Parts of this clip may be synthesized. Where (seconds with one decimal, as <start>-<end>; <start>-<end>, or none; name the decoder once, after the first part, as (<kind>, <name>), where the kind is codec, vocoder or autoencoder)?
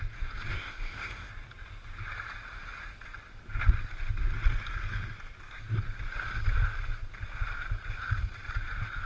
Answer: 0.5-1.3 (codec, ZipCodec)